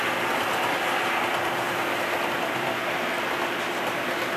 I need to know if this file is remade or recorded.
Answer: recorded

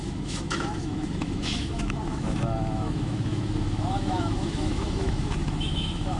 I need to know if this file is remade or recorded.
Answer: remade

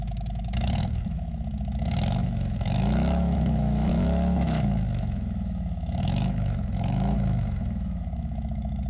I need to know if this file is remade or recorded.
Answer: remade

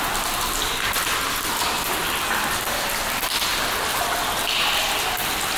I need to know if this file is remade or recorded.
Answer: recorded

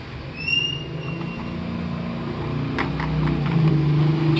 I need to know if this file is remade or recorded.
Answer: recorded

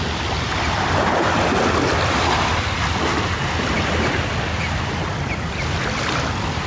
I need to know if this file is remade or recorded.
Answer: recorded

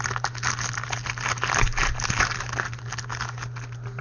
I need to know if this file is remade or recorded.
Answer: recorded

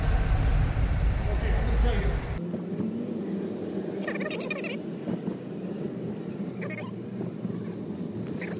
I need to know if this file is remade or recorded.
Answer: recorded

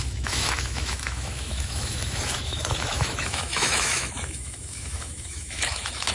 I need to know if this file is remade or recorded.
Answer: remade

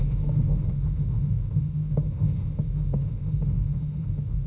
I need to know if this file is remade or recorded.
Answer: remade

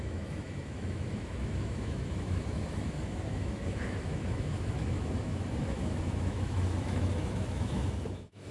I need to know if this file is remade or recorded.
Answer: remade